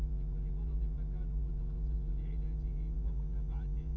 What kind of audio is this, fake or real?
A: fake